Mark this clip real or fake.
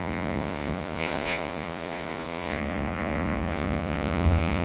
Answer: fake